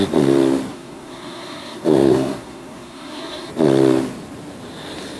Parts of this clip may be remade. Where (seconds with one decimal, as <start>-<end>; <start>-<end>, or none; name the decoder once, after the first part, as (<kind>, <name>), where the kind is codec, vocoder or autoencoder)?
0.7-3.5 (codec, SNAC)